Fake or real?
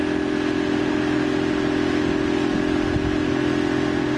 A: real